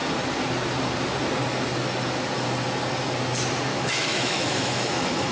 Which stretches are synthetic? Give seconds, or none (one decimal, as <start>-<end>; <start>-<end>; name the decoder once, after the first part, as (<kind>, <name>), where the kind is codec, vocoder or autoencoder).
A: 3.7-5.3 (autoencoder, DAC-VAE)

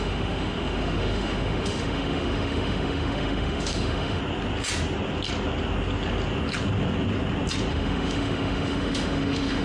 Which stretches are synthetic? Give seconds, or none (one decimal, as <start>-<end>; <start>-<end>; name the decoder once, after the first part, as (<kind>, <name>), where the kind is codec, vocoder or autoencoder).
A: 0.0-4.2 (autoencoder, DAC-VAE); 7.7-9.6

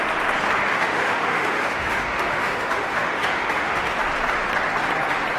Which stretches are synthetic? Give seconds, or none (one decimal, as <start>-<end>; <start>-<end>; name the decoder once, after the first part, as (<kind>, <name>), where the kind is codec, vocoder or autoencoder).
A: 0.7-3.9 (autoencoder, DAC-VAE)

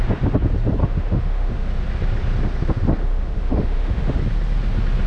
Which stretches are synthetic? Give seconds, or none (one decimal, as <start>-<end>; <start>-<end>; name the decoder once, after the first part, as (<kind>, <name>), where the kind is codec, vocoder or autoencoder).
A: 0.8-1.7 (autoencoder, DAC-VAE); 3.0-4.2

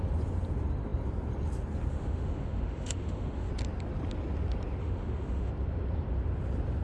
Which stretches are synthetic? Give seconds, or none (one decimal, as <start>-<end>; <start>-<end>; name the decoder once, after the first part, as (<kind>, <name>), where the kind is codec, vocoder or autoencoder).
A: 1.9-3.5 (autoencoder, DAC-VAE); 4.8-5.5

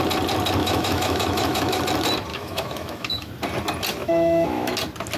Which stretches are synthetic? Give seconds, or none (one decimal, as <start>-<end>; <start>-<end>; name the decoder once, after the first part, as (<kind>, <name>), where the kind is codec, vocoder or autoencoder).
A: 0.6-1.8 (autoencoder, DAC-VAE); 2.3-3.3; 4.0-4.7

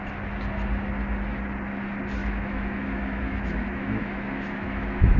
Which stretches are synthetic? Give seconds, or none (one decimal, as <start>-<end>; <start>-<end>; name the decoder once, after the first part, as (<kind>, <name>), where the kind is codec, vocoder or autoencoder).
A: 2.2-5.2 (autoencoder, DAC-VAE)

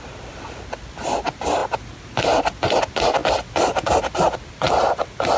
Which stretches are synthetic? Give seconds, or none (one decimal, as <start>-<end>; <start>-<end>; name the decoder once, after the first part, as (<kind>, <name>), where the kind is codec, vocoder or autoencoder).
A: none